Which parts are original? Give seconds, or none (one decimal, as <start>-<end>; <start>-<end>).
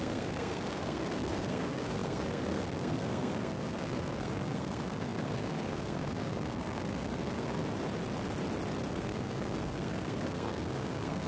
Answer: 7.6-8.9